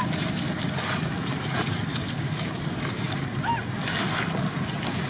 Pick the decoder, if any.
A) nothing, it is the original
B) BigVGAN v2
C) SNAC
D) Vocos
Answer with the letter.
A